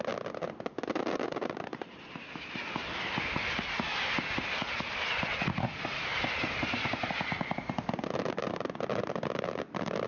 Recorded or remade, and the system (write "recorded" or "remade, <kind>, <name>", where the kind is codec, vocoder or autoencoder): recorded